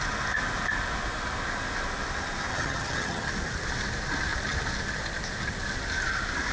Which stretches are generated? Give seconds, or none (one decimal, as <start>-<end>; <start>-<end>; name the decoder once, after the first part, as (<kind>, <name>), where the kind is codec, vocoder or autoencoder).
2.5-3.3 (vocoder, HiFi-GAN)